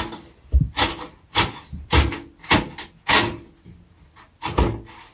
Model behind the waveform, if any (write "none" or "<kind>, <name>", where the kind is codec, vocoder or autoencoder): none